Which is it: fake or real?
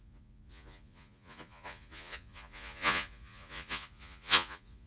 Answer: fake